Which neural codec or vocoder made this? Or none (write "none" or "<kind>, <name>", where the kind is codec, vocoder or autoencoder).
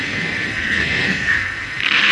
codec, SNAC